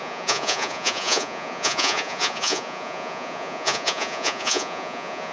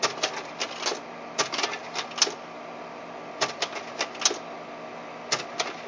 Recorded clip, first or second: second